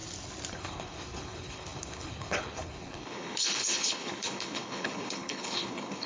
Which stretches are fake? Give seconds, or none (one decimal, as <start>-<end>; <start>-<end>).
0.5-6.1